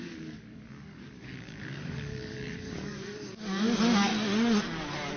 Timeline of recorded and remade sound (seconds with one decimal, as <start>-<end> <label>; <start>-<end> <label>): 0.0-4.1 remade; 4.1-5.2 recorded